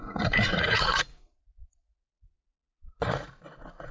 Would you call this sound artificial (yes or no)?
yes